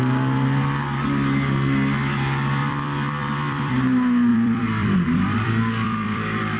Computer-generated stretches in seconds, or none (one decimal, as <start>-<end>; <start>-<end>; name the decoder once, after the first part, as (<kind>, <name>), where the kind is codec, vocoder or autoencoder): 2.6-3.7 (vocoder, BigVGAN v2); 4.3-6.6